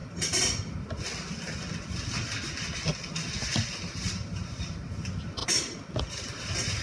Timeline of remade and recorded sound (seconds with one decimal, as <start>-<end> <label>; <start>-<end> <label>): 0.0-6.8 recorded